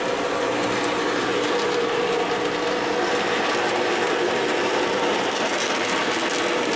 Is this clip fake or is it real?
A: real